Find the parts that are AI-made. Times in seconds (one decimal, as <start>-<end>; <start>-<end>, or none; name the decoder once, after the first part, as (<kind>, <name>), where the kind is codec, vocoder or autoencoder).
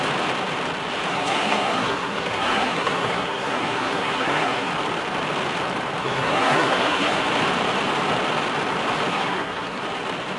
1.1-4.7 (codec, SNAC); 6.0-7.2; 9.1-9.8